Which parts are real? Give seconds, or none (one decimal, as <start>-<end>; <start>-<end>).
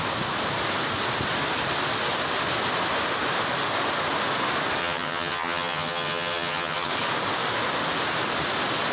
0.0-4.8; 6.9-8.9